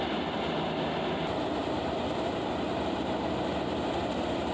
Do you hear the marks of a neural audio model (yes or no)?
no